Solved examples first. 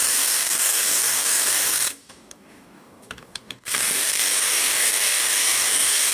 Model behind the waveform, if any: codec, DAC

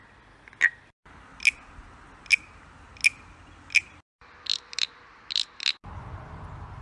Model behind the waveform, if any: none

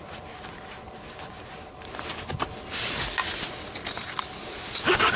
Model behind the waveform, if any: none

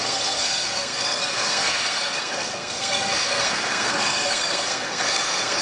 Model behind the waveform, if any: codec, SNAC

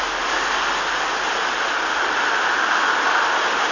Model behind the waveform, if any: none